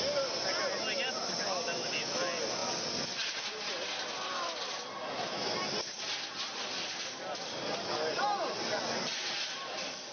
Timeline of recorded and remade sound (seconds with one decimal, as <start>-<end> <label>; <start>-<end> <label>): 0.0-10.1 recorded